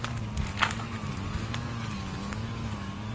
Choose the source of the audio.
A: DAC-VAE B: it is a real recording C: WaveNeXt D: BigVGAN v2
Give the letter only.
B